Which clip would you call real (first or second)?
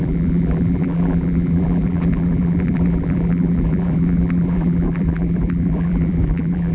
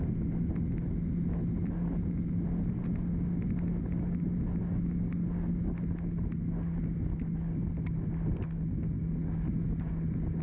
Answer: second